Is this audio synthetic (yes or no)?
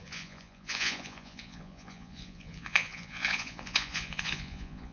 yes